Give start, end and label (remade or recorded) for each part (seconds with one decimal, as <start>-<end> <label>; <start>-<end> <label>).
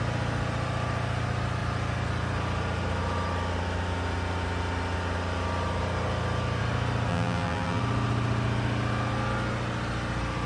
0.0-7.1 recorded; 7.1-7.8 remade; 7.8-10.5 recorded